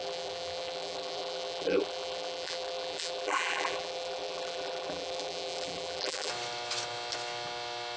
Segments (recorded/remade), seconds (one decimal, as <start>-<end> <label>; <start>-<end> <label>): 0.0-6.3 remade; 6.3-8.0 recorded